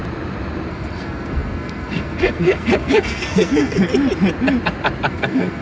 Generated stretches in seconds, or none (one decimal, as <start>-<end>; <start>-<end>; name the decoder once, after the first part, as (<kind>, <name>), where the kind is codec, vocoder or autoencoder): 0.7-3.9 (codec, SNAC); 5.1-5.6